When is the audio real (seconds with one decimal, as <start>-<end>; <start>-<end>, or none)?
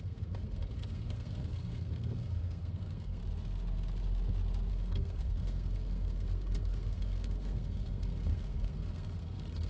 3.2-4.7